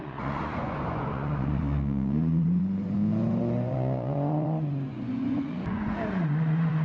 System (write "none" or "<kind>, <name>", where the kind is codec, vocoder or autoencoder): vocoder, Vocos